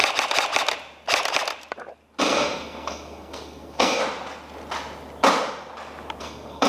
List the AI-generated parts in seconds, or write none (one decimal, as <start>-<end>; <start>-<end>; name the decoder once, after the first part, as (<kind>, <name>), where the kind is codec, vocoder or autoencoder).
2.2-4.0 (codec, SNAC); 6.2-6.7